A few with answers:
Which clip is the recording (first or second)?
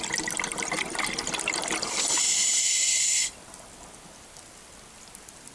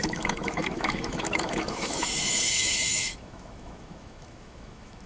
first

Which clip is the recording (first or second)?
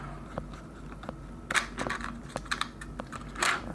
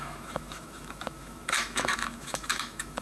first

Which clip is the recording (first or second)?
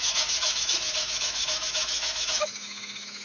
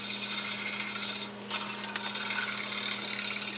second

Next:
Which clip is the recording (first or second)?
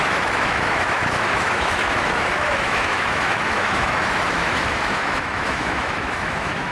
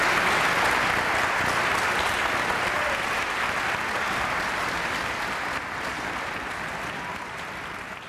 second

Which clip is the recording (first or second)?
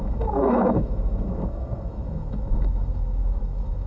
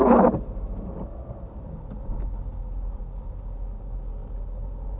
second